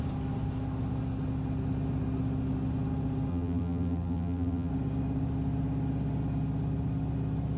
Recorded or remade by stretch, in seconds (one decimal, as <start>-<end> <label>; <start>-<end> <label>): 0.0-3.3 recorded; 3.3-4.7 remade; 4.7-7.6 recorded